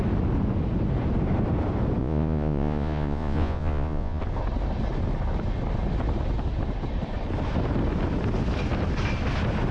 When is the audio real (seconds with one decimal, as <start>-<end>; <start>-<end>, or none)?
0.0-2.0; 4.2-9.7